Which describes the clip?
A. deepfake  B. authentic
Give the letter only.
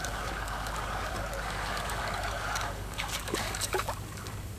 A